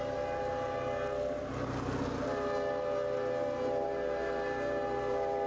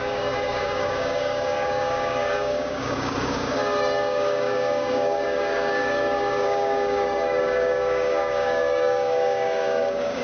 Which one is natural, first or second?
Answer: first